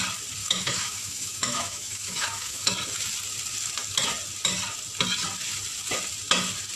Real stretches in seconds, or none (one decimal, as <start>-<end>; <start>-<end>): 0.0-0.4; 2.7-6.8